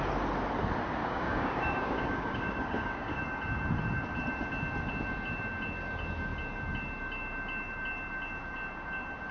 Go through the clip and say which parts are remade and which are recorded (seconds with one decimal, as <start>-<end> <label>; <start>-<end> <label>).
0.0-1.0 recorded; 1.0-3.2 remade; 3.2-9.3 recorded